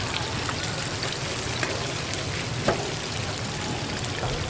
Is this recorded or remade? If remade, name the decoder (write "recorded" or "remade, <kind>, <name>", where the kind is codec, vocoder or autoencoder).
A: recorded